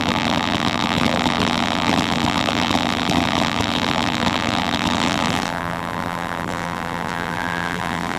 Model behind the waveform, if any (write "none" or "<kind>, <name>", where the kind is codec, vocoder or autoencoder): vocoder, BigVGAN v2